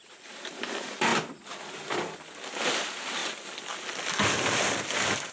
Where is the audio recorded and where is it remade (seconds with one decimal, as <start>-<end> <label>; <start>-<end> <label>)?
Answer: 0.0-3.2 remade; 3.2-5.3 recorded